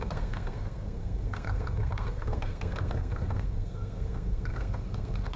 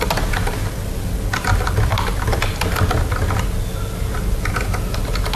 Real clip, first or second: second